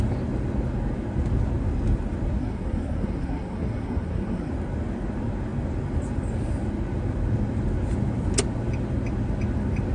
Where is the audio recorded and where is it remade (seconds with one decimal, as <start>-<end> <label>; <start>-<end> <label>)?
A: 0.0-2.4 recorded; 2.4-4.5 remade; 4.5-9.9 recorded